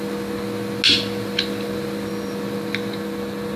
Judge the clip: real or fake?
real